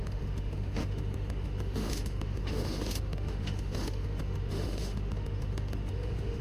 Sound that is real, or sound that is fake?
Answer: fake